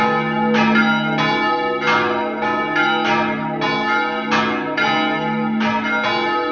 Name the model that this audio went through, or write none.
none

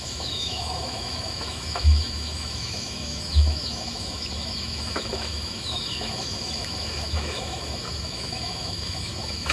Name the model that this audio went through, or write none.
autoencoder, DAC-VAE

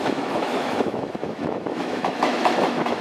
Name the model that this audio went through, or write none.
autoencoder, DAC-VAE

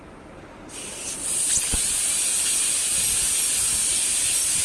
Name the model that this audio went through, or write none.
none